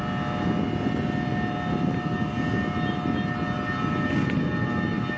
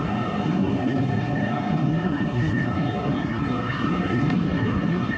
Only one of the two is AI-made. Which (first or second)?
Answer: second